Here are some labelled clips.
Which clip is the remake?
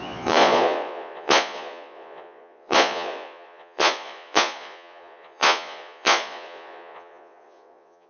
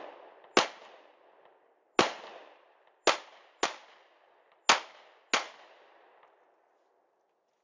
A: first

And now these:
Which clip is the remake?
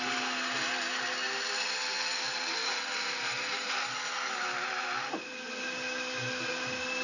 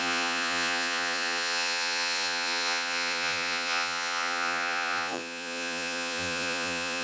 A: second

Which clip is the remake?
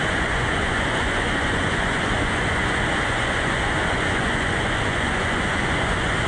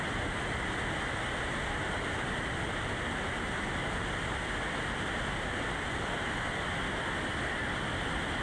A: first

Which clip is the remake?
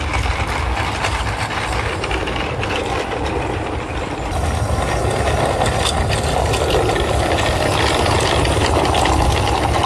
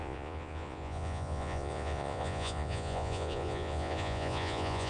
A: second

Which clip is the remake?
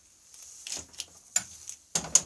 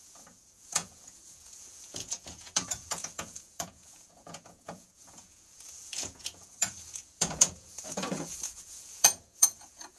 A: second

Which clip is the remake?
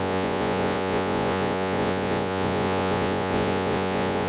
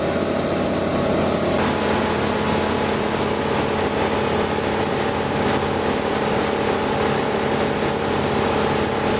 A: first